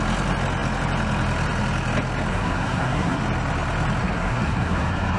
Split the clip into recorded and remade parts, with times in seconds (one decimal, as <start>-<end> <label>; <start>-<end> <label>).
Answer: 0.0-2.3 recorded; 2.3-3.2 remade; 3.2-4.0 recorded; 4.0-5.2 remade